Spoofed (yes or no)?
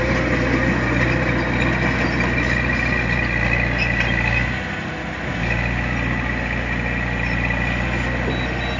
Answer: no